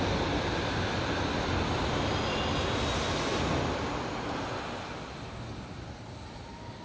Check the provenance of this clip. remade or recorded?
recorded